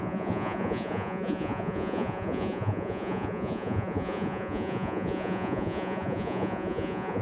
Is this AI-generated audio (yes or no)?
yes